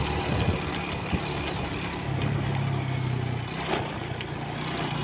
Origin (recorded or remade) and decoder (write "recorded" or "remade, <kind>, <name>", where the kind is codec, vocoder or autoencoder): recorded